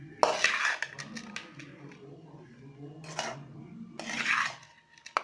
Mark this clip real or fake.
real